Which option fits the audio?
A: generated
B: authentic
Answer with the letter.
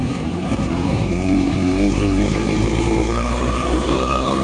A